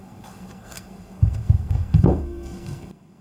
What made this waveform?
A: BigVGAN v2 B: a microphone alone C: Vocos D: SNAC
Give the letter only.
D